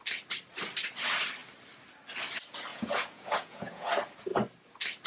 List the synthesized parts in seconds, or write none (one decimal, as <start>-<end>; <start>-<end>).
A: 2.7-3.9